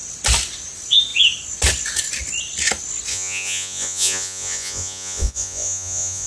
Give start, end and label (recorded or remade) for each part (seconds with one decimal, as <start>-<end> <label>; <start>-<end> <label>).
0.0-3.1 recorded; 3.1-6.3 remade